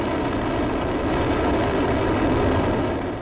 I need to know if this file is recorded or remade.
recorded